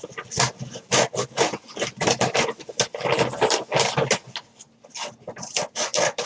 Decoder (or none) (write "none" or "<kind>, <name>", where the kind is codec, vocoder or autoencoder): none